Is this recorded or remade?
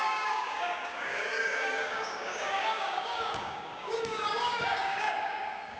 remade